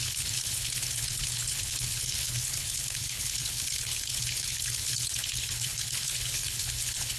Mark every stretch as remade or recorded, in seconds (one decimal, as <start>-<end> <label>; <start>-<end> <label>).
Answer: 0.0-7.2 remade